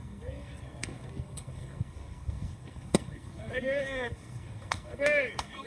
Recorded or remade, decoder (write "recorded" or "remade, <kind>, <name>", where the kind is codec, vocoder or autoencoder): remade, codec, SNAC